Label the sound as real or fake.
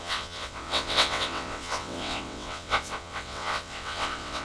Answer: fake